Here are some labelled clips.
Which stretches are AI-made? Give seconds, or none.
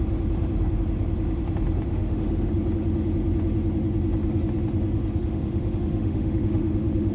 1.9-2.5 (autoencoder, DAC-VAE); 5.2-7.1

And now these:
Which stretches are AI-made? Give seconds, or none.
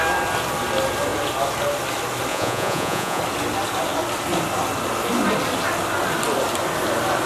2.3-3.2 (vocoder, Vocos)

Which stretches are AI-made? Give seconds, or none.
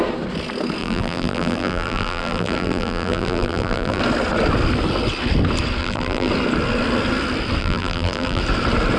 0.8-4.0 (vocoder, BigVGAN v2); 5.8-6.3; 7.6-8.4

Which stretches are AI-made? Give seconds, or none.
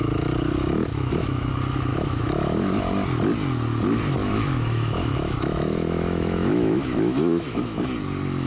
0.9-1.5 (autoencoder, DAC-VAE); 1.9-2.8; 4.2-7.8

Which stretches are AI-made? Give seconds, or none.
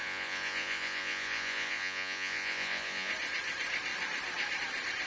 0.0-3.1 (vocoder, Vocos)